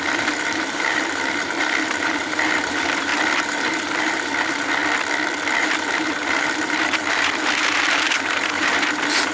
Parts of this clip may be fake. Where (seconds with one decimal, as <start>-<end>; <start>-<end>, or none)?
0.0-4.8; 5.6-9.3